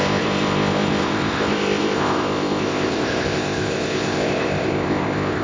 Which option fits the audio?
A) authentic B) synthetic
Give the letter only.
B